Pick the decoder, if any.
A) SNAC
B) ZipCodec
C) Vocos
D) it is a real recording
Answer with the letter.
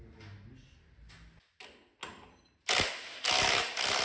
D